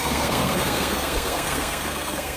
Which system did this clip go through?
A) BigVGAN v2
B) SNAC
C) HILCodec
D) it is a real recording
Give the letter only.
B